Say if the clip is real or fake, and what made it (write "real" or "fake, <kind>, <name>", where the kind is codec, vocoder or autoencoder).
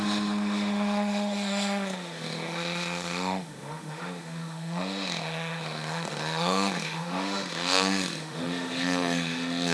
fake, autoencoder, DAC-VAE